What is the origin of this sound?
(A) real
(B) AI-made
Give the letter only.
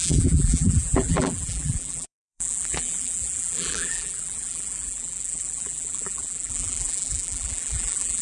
B